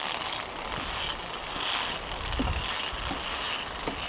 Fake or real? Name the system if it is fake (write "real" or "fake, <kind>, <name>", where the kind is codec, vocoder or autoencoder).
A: real